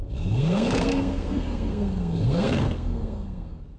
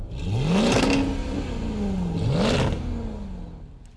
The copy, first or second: first